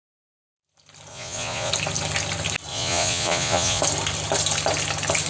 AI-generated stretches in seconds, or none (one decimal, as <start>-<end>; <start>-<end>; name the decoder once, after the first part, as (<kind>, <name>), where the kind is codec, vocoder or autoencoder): 1.1-1.7 (vocoder, Vocos); 2.7-3.8